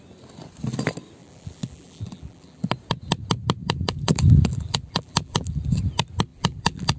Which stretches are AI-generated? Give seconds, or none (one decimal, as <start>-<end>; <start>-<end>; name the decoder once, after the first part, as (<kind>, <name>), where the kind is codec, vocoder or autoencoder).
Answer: 1.2-2.7 (vocoder, BigVGAN v2); 3.6-5.8; 6.3-7.0